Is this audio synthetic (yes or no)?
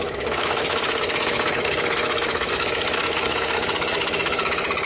yes